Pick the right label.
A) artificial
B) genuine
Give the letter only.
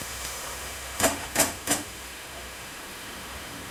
A